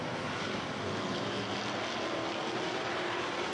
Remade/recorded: recorded